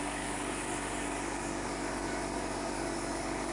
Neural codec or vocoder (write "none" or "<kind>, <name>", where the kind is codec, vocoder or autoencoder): codec, DAC